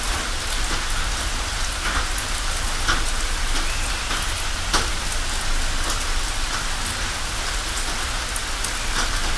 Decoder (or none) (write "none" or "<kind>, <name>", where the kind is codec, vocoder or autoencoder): none